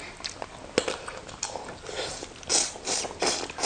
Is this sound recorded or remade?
recorded